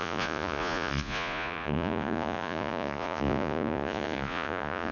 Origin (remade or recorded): remade